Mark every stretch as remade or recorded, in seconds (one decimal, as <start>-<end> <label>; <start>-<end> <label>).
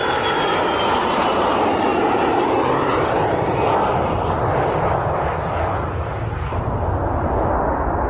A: 0.0-8.1 recorded